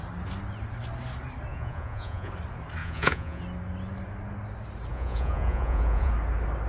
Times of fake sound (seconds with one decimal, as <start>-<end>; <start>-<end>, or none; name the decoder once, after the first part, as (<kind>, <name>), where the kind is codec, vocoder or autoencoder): 1.5-2.3 (vocoder, Vocos); 2.8-3.4; 4.9-6.1